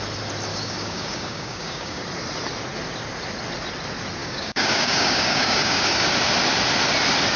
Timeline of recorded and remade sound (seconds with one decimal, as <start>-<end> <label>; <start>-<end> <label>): 0.0-0.5 recorded; 0.5-2.0 remade; 2.0-4.2 recorded; 4.2-6.1 remade; 6.1-7.4 recorded